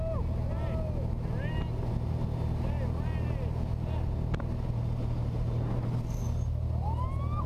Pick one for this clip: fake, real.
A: real